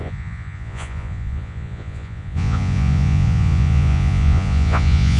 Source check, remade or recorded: remade